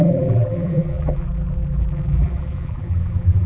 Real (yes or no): no